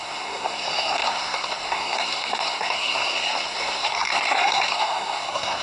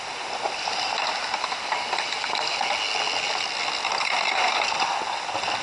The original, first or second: second